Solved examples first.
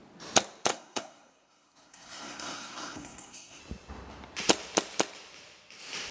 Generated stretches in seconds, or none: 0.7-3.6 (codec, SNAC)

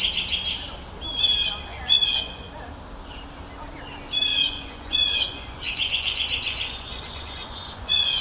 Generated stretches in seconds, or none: 1.7-2.5 (vocoder, Vocos); 4.3-8.2

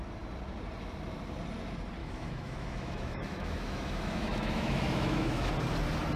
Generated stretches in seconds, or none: 2.0-5.5 (autoencoder, DAC-VAE)

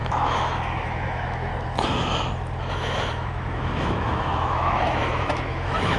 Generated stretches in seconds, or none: 0.0-1.5 (autoencoder, DAC-VAE); 2.7-6.0

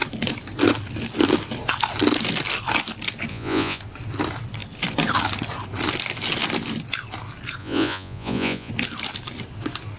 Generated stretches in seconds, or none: 3.3-3.8 (vocoder, Vocos); 7.6-8.7

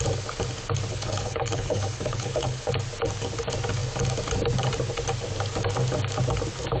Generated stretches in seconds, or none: 0.9-2.7 (codec, HILCodec)

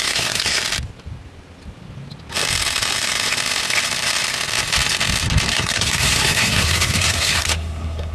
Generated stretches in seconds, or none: 0.0-0.6 (codec, SNAC); 5.5-8.1